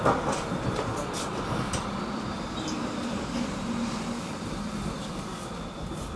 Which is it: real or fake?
fake